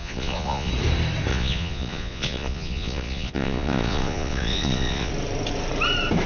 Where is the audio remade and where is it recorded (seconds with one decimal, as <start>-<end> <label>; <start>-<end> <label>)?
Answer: 0.0-0.7 remade; 0.7-1.3 recorded; 1.3-5.1 remade; 5.1-6.3 recorded